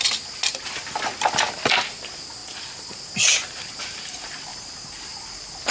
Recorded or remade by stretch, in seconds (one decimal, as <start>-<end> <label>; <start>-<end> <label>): 0.0-4.5 recorded; 4.5-5.0 remade; 5.0-5.7 recorded